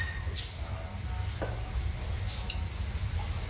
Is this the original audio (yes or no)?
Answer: yes